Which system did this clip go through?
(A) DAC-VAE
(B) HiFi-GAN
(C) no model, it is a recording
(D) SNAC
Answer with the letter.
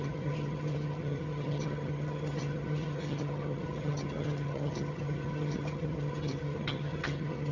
B